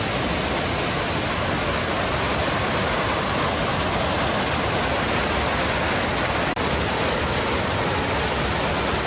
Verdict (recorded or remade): recorded